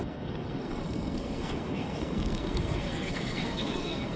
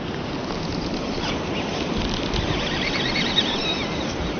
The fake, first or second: first